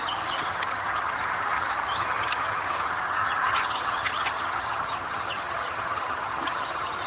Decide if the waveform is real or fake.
fake